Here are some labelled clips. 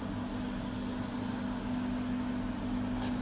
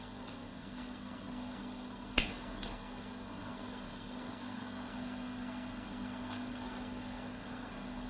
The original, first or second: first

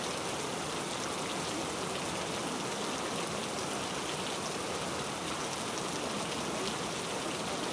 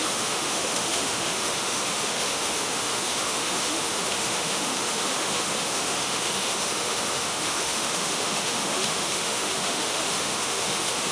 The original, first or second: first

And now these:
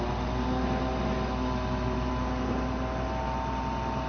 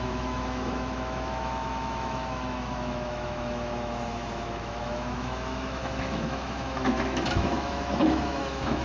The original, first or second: first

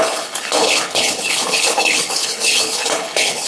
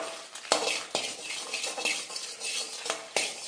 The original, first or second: second